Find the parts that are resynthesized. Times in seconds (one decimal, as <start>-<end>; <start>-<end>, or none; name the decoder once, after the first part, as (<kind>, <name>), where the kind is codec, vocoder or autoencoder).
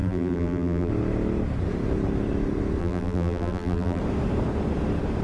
0.0-0.9 (vocoder, BigVGAN v2); 2.8-4.0